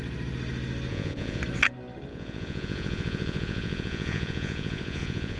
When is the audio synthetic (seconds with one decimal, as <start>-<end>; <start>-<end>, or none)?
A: 0.9-1.4; 2.1-5.4